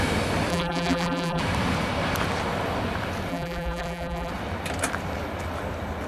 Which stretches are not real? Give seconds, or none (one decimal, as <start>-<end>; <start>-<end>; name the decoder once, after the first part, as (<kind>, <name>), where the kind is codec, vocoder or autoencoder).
0.5-1.4 (vocoder, BigVGAN v2); 3.3-4.3